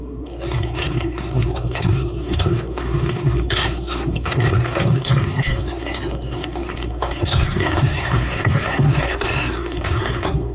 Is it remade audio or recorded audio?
remade